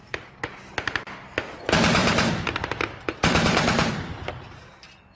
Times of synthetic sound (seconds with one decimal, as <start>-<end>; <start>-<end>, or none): 2.0-4.6